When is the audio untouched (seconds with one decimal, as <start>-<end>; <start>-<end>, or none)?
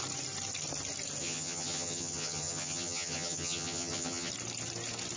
0.0-1.2; 4.3-5.2